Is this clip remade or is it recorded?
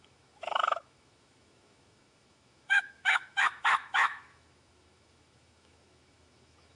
remade